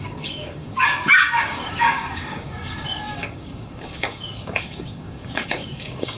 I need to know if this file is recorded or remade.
remade